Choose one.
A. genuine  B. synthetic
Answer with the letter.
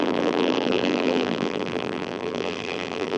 B